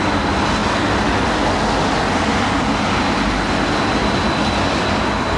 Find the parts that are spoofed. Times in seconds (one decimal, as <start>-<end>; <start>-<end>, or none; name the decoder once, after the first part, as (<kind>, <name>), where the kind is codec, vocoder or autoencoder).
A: none